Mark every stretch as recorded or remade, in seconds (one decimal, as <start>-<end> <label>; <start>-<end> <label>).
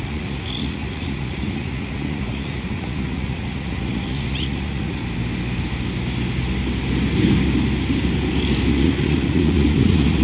0.0-5.0 remade; 5.0-8.7 recorded; 8.7-10.2 remade